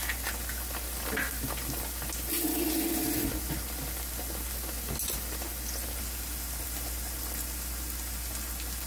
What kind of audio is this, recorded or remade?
recorded